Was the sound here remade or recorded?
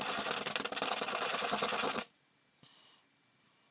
recorded